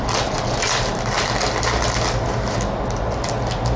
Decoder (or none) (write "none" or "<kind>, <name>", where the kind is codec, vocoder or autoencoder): none